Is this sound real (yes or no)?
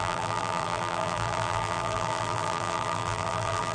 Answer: no